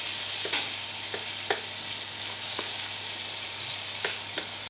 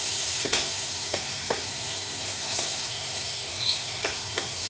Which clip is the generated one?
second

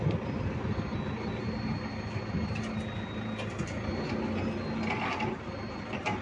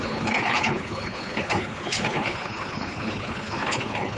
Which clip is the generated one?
second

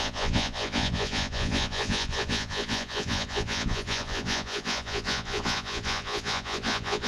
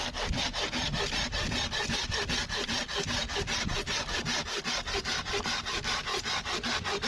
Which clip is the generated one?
first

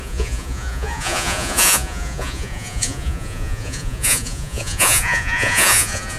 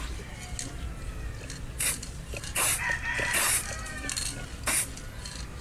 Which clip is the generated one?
first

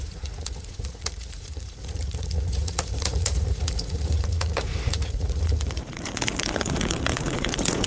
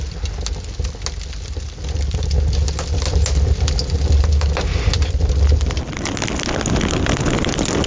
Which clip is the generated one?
first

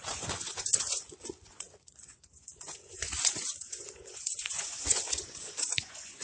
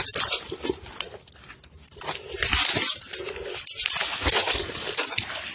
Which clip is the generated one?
first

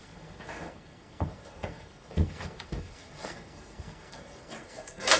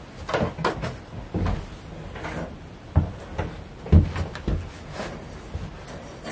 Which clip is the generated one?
first